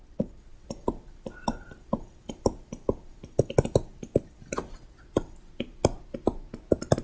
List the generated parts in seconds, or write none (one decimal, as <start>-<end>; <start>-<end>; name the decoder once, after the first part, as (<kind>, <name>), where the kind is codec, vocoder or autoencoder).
none